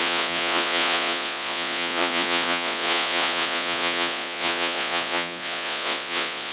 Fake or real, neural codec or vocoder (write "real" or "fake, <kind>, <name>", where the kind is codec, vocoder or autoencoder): fake, vocoder, Vocos